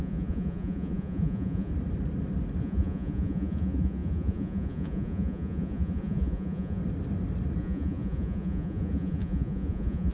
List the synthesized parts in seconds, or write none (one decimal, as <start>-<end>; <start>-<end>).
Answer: 0.0-1.7; 2.6-6.8; 7.6-10.1